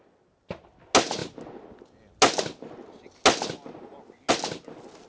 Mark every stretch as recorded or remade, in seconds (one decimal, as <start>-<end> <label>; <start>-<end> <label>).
0.0-5.1 recorded